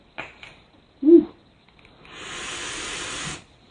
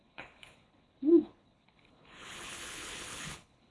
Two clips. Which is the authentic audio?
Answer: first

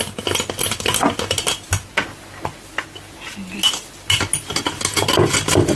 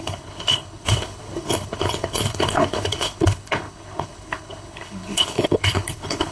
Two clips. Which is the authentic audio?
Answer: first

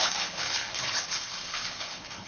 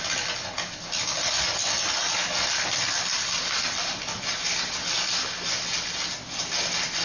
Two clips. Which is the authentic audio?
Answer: second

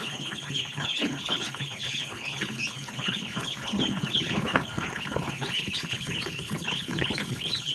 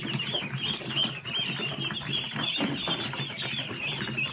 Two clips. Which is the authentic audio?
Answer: second